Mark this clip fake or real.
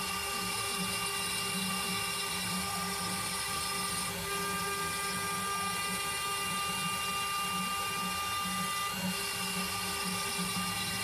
real